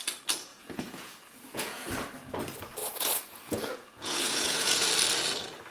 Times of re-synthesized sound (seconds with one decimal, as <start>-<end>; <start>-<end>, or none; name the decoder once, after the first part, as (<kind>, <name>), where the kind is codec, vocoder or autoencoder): 0.5-1.9 (vocoder, Vocos); 2.8-4.9